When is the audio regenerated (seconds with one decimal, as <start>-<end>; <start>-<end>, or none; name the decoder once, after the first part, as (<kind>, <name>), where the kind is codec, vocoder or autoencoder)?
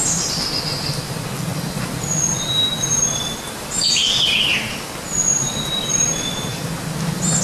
none